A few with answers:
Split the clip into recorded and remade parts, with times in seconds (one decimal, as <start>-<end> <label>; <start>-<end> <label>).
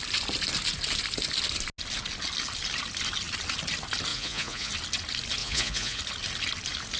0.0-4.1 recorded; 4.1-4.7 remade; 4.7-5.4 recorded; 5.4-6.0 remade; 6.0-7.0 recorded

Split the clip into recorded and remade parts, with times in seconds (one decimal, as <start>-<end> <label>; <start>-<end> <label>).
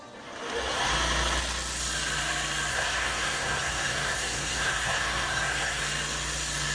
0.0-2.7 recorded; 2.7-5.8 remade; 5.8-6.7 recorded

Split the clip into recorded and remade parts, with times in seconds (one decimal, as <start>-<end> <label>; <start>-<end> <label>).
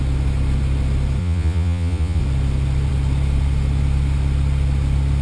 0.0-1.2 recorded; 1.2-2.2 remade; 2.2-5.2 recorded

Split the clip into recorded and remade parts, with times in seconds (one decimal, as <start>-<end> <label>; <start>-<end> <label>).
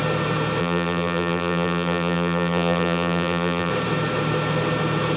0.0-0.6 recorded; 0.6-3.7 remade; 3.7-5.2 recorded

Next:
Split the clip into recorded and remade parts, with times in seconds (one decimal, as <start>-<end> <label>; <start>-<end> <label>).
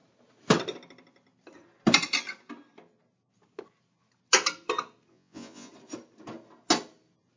0.0-5.1 recorded; 5.1-5.7 remade; 5.7-7.4 recorded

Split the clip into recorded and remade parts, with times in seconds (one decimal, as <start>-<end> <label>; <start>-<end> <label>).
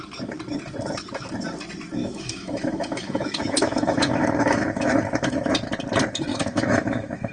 0.0-2.0 recorded; 2.0-5.5 remade; 5.5-6.3 recorded; 6.3-7.3 remade